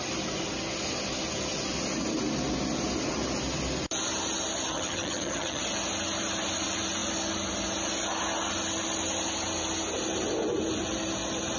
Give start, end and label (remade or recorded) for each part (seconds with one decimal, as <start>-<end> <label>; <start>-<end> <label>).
0.0-4.7 recorded; 4.7-5.6 remade; 5.6-11.6 recorded